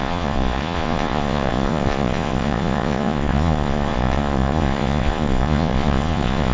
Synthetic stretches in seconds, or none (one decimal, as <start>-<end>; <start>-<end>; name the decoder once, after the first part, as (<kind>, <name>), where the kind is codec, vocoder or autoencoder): 0.0-6.5 (vocoder, Vocos)